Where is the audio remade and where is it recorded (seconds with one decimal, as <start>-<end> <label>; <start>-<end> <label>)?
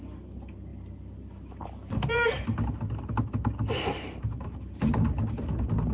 0.0-5.9 recorded